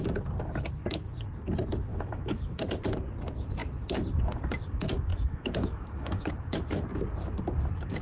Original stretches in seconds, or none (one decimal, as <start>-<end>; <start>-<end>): 0.0-1.9; 2.6-5.1; 6.3-8.0